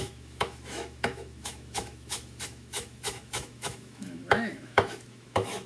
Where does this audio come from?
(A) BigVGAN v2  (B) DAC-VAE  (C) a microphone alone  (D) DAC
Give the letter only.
B